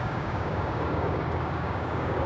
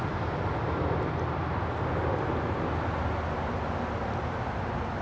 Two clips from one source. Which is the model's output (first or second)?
first